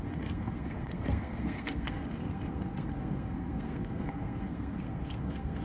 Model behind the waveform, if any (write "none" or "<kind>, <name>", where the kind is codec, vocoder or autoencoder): codec, SNAC